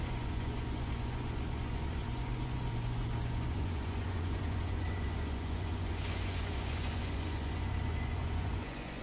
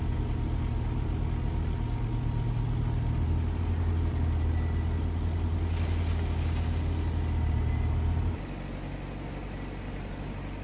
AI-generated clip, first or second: first